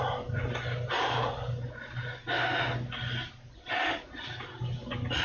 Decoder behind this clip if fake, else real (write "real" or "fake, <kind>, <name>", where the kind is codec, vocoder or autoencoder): real